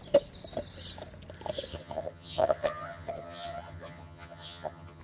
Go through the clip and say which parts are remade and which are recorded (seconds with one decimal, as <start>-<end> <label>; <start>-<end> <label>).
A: 0.0-1.7 recorded; 1.7-5.0 remade